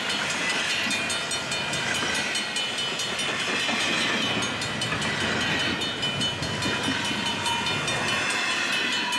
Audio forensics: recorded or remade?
recorded